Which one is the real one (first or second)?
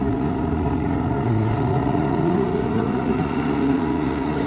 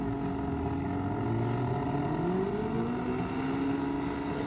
second